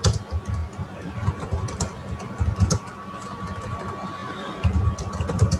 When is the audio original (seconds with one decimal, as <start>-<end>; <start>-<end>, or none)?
0.0-0.6; 1.3-5.6